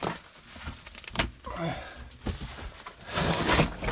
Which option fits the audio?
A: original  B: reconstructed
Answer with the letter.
A